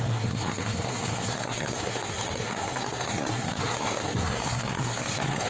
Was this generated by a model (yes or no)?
yes